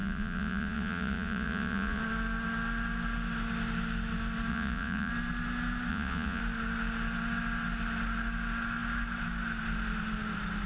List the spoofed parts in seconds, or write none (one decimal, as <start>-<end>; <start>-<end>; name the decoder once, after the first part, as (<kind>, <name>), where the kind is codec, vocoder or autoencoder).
0.0-2.0 (vocoder, Vocos); 4.5-5.1; 5.9-6.4